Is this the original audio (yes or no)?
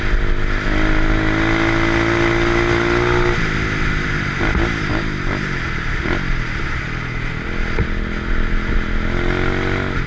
yes